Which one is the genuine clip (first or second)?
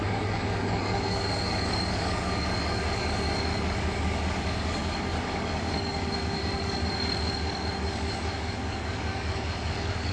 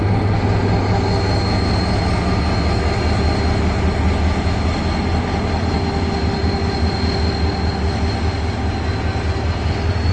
second